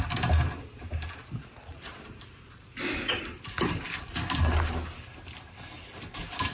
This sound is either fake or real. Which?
real